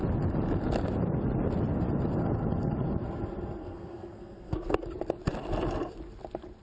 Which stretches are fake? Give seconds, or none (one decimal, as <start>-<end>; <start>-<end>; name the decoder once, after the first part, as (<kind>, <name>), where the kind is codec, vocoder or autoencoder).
3.6-4.8 (codec, SNAC)